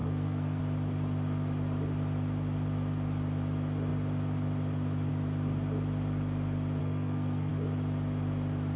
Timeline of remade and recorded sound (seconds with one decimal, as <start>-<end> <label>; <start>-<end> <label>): 0.0-0.6 remade; 0.6-6.8 recorded; 6.8-7.5 remade; 7.5-8.8 recorded